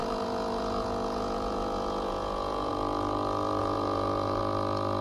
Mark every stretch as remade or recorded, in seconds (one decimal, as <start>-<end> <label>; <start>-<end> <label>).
0.0-2.7 remade; 2.7-3.6 recorded; 3.6-4.4 remade; 4.4-5.0 recorded